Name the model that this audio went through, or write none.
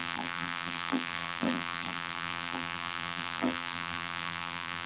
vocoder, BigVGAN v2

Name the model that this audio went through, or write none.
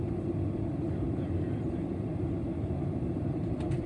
vocoder, BigVGAN v2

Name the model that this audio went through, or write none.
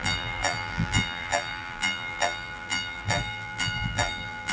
vocoder, BigVGAN v2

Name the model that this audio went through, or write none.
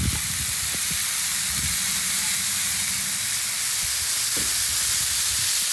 vocoder, BigVGAN v2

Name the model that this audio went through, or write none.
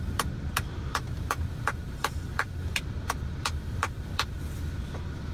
vocoder, BigVGAN v2